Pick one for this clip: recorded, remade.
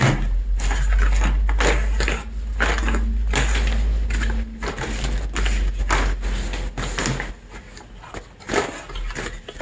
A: recorded